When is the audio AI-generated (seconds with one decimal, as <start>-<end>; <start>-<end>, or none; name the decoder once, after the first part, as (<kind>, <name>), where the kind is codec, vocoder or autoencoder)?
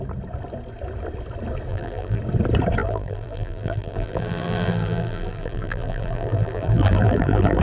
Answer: 1.7-2.2 (vocoder, BigVGAN v2); 2.8-7.6